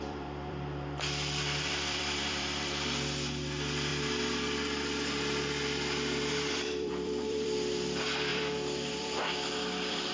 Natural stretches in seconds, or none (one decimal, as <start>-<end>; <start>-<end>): 3.9-6.3

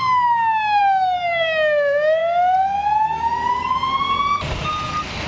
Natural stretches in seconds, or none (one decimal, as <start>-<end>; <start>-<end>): 0.0-5.3

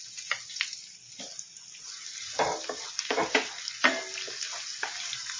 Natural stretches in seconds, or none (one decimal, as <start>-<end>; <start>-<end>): 0.0-5.4

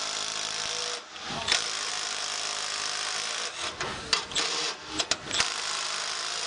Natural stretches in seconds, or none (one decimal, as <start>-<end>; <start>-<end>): 0.0-6.5

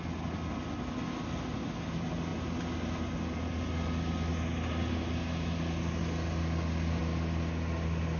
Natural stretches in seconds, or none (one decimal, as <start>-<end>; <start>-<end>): 0.0-8.2

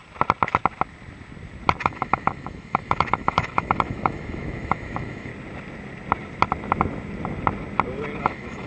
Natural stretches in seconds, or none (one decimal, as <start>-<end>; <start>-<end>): 0.0-1.8; 5.3-8.2

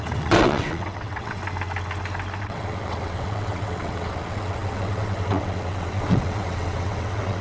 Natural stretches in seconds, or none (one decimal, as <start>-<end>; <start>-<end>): 1.4-2.4